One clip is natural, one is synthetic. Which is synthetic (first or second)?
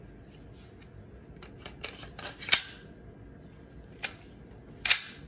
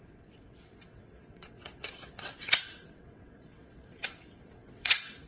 second